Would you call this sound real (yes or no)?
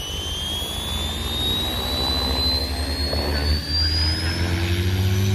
yes